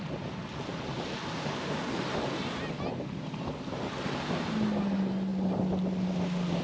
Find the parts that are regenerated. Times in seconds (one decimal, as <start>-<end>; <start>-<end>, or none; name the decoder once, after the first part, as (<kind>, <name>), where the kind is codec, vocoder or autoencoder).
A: none